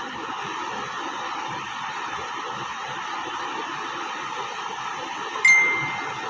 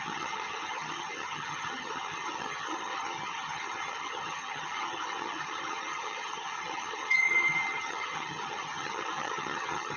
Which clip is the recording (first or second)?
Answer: first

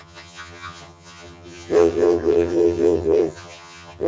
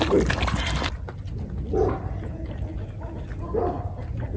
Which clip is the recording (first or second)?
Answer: second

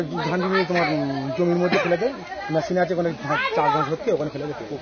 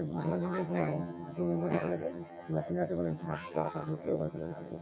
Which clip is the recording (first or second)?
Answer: first